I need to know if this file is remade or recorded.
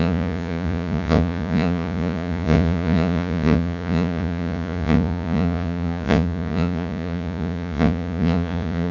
remade